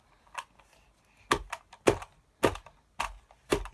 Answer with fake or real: real